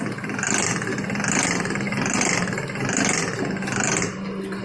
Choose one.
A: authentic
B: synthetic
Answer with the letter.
A